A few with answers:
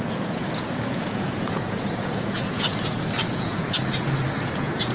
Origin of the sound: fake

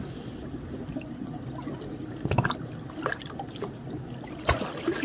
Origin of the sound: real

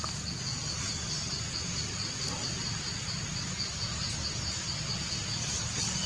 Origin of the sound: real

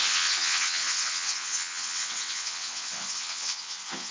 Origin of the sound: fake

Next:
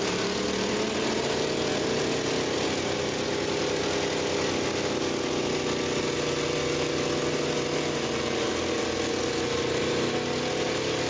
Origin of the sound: real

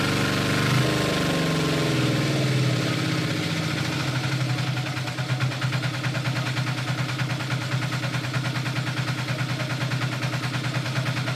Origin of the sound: real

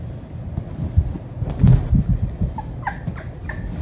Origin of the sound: real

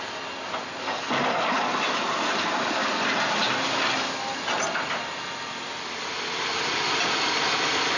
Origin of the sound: real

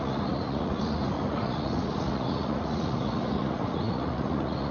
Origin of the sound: fake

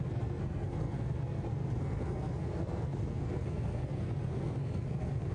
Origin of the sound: fake